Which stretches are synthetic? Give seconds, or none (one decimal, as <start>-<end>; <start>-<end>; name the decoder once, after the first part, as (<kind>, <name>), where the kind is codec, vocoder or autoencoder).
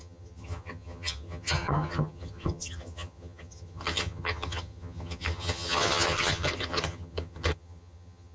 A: 0.0-8.3 (vocoder, HiFi-GAN)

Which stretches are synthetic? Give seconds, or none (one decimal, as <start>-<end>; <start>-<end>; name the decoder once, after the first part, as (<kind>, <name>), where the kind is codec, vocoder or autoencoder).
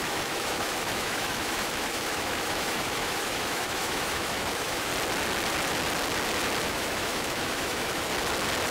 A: 0.0-4.9 (autoencoder, DAC-VAE); 6.7-8.1